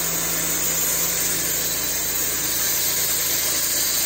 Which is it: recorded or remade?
recorded